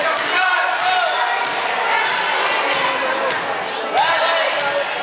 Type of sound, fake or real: real